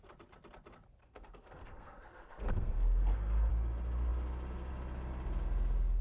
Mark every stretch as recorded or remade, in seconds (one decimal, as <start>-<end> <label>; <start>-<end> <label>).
0.0-1.0 recorded; 1.0-3.5 remade; 3.5-6.0 recorded